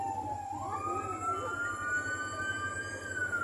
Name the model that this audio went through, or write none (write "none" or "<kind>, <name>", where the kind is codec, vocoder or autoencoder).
none